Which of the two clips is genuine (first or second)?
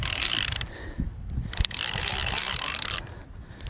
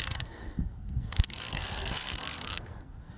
first